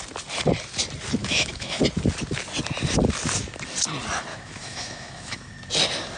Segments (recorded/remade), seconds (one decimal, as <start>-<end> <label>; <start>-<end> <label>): 0.0-1.2 recorded; 1.2-1.8 remade; 1.8-4.3 recorded; 4.3-5.5 remade; 5.5-6.2 recorded